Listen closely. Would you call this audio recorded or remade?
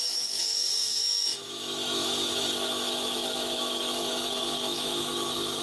remade